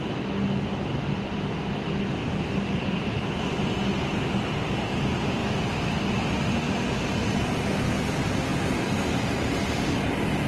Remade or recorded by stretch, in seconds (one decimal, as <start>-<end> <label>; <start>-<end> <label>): 0.0-10.5 recorded